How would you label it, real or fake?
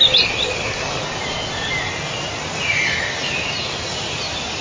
real